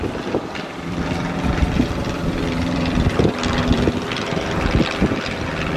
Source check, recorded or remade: remade